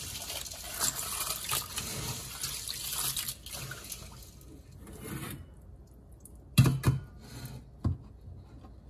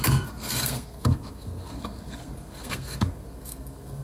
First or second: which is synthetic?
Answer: second